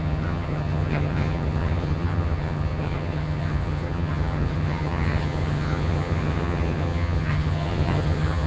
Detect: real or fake fake